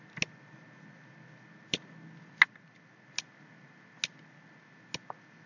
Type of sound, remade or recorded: recorded